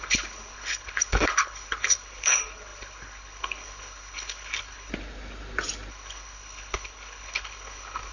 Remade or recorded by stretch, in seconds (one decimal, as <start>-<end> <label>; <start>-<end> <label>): 0.0-4.9 remade; 4.9-5.9 recorded; 5.9-8.1 remade